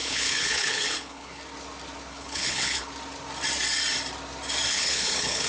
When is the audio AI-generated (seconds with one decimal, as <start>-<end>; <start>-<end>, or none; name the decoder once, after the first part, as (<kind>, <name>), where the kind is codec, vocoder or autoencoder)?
0.0-1.4 (codec, HILCodec); 2.1-2.9; 4.7-5.5